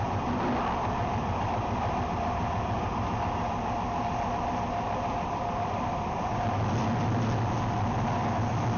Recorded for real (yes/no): yes